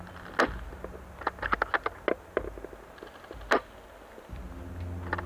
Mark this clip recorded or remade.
recorded